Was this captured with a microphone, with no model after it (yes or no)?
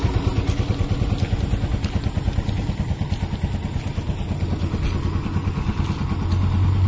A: yes